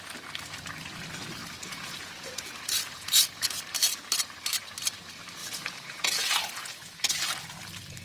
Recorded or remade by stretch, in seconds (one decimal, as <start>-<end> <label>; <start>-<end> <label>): 0.0-1.4 recorded; 1.4-3.6 remade; 3.6-5.4 recorded; 5.4-7.1 remade; 7.1-8.0 recorded